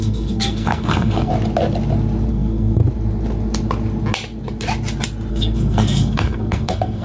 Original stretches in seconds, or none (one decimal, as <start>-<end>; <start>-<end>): 1.3-2.3; 2.8-5.3